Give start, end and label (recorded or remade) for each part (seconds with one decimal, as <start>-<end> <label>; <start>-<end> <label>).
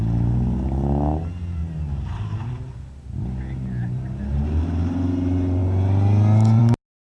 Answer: 0.0-1.6 recorded; 1.6-2.5 remade; 2.5-7.0 recorded